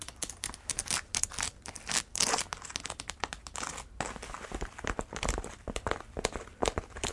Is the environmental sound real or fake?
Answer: real